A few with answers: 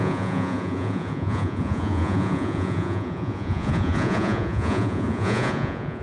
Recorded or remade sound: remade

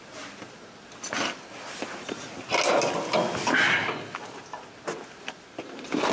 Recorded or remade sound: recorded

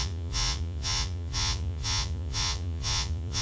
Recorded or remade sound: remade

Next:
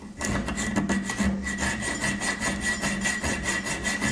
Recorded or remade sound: recorded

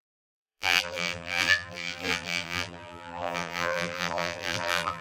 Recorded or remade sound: remade